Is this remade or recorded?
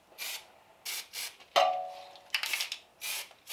recorded